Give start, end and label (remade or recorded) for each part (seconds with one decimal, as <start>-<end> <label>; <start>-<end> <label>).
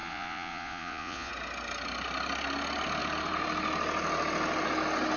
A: 0.0-1.3 remade; 1.3-5.2 recorded